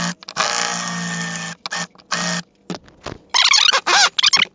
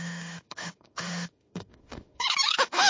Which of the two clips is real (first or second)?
first